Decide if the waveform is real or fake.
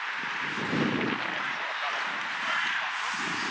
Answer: real